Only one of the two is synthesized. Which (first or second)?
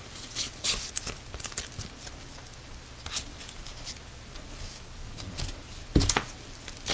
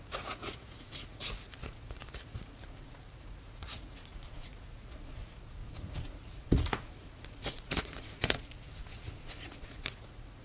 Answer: second